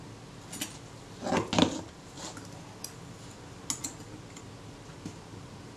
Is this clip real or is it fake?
real